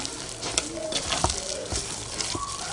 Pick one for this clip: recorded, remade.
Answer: recorded